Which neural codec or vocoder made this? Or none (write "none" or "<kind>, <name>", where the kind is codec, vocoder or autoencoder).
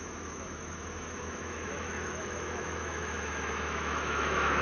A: autoencoder, DAC-VAE